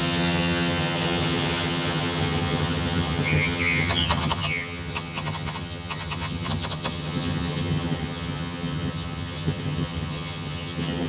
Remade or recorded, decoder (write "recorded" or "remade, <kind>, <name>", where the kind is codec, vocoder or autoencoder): remade, vocoder, HiFi-GAN